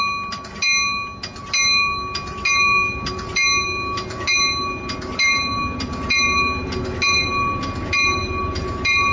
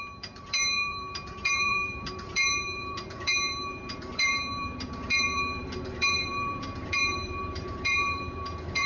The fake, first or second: second